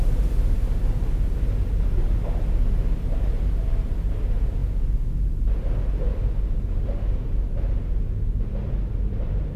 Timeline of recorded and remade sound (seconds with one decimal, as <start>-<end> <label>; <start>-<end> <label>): 0.0-9.6 recorded